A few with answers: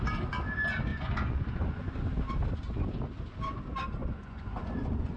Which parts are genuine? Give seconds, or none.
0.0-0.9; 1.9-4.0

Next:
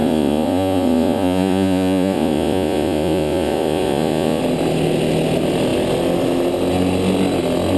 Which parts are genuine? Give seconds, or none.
4.4-7.8

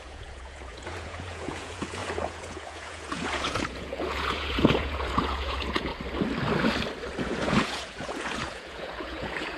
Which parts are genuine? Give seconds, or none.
5.9-7.2

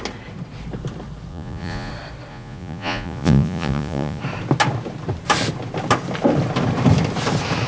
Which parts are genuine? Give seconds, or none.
0.0-1.3; 1.9-2.3; 4.2-7.7

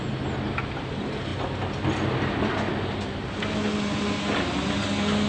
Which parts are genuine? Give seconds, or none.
0.0-5.3